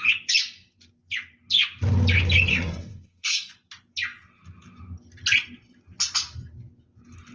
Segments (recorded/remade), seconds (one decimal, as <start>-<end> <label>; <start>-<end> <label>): 0.0-2.5 recorded; 2.5-3.5 remade; 3.5-7.3 recorded